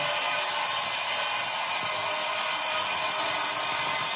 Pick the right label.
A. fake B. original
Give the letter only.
B